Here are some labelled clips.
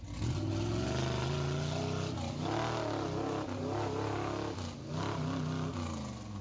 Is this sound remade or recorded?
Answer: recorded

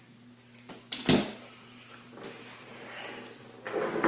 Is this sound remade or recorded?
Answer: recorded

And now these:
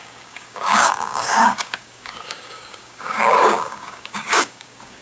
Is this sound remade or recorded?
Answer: remade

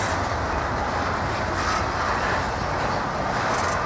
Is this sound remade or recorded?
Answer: recorded